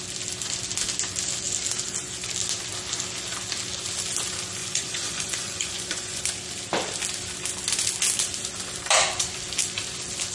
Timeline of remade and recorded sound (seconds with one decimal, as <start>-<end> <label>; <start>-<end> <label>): 0.0-4.6 recorded; 4.6-6.2 remade; 6.2-10.3 recorded